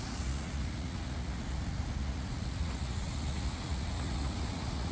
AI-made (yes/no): yes